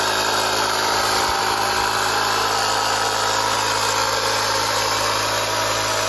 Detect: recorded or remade recorded